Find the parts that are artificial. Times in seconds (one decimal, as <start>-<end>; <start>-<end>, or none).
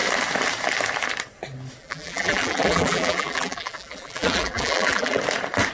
1.8-5.2